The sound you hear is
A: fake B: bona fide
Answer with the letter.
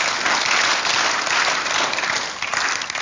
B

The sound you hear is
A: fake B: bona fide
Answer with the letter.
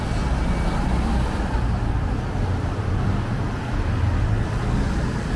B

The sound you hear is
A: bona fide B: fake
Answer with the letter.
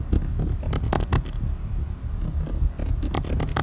A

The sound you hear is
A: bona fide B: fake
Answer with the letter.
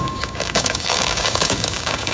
B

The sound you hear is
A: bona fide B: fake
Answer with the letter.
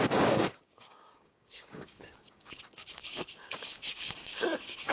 B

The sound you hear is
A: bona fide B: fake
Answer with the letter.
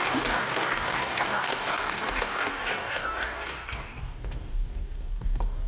B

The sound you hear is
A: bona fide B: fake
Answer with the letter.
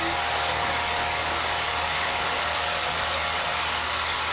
B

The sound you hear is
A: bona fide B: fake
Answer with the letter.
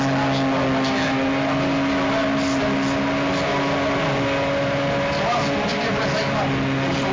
A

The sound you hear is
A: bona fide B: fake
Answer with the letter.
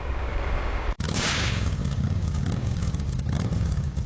B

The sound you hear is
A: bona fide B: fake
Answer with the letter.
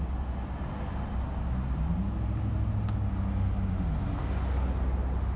A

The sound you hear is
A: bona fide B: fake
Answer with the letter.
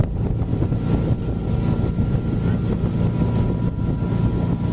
A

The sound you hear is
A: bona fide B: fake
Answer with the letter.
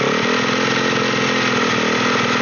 A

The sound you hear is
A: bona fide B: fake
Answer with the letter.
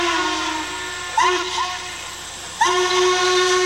A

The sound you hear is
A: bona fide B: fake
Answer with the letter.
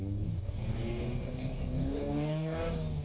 B